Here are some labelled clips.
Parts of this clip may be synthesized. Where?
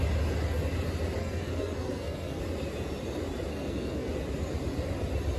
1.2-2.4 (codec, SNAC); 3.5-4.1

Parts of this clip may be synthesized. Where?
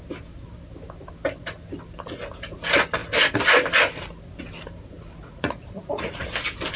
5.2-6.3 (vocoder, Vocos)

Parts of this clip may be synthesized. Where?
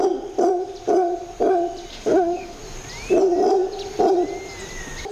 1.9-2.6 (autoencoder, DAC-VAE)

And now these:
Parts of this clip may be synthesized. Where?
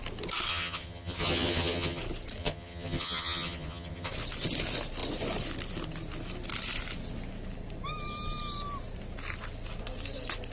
0.5-2.0 (vocoder, HiFi-GAN); 2.4-4.1